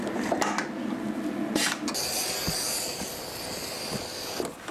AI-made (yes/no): no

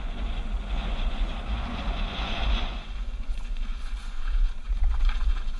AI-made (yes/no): yes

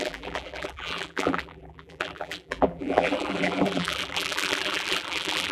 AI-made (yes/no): yes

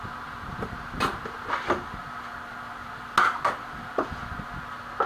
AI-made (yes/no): no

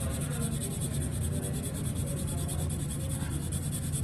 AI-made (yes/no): no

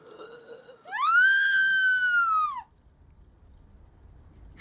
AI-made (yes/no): no